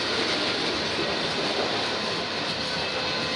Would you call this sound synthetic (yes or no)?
no